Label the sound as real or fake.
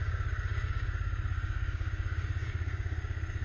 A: fake